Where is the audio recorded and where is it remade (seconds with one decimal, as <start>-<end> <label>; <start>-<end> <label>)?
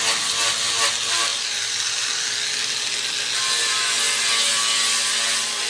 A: 0.0-5.7 recorded